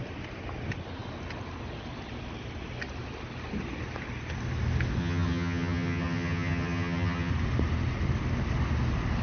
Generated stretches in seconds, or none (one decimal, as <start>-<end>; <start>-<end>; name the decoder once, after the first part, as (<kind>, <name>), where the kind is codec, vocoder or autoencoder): 5.0-7.3 (vocoder, HiFi-GAN)